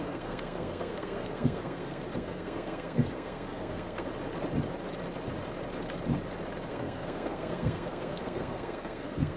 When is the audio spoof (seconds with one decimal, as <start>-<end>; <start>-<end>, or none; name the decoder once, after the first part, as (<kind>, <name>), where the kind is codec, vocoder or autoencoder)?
0.0-4.1 (codec, SNAC); 6.7-9.4